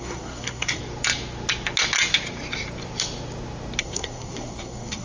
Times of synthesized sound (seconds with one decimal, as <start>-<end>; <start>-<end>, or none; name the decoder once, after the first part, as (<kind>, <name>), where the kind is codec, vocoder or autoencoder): 0.0-0.8 (codec, SNAC); 3.8-5.0